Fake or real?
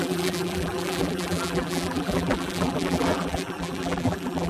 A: fake